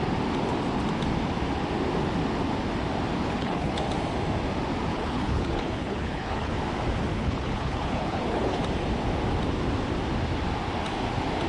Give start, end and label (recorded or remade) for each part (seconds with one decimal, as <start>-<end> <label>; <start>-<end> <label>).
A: 0.0-3.2 recorded; 3.2-3.8 remade; 3.8-4.9 recorded; 4.9-6.5 remade; 6.5-7.1 recorded; 7.1-8.6 remade; 8.6-11.5 recorded